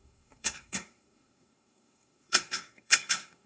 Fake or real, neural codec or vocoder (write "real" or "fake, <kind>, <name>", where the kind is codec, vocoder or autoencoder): fake, codec, SNAC